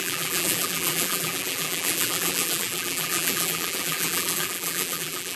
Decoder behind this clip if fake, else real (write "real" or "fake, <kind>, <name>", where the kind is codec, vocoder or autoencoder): fake, vocoder, BigVGAN v2